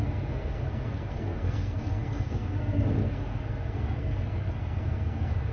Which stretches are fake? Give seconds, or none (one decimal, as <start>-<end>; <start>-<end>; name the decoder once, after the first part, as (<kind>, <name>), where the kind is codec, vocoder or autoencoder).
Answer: 0.0-5.5 (codec, SNAC)